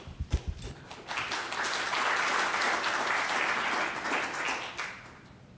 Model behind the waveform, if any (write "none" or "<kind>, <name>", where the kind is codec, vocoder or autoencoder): none